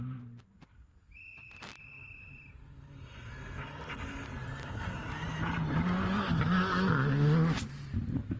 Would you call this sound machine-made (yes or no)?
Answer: no